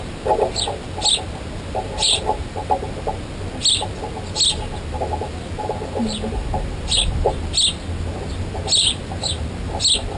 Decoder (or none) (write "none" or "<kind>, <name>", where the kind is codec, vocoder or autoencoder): none